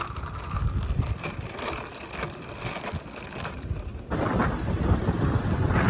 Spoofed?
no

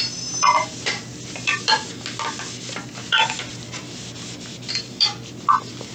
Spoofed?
no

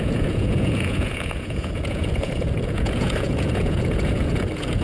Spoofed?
yes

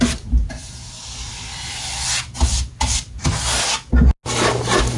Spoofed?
no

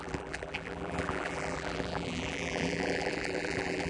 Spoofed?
yes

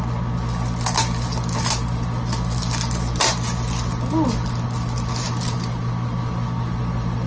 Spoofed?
no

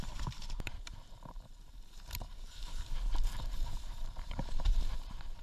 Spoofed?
yes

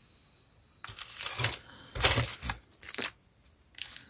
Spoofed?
no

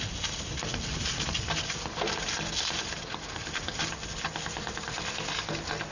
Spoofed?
no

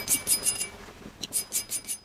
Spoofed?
no